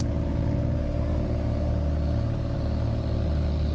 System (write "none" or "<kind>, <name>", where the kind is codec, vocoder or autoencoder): none